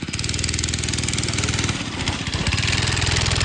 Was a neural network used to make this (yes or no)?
no